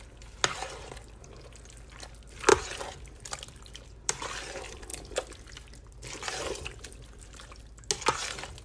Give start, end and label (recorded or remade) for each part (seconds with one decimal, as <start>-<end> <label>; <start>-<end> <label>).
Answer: 0.0-2.5 recorded; 2.5-4.2 remade; 4.2-4.9 recorded; 4.9-5.5 remade; 5.5-8.6 recorded